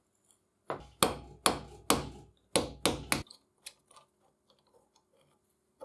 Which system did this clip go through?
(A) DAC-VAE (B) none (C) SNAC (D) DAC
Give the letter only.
B